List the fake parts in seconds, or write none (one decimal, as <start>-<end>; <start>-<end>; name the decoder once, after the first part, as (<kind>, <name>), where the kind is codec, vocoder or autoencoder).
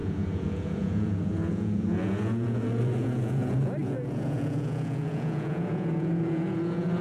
0.0-7.0 (vocoder, Vocos)